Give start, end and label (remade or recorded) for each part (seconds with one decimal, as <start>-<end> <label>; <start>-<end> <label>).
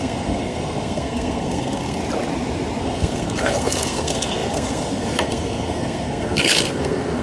0.0-2.0 remade; 2.0-2.8 recorded; 2.8-7.2 remade